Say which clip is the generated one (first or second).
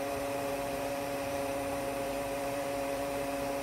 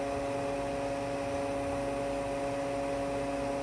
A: first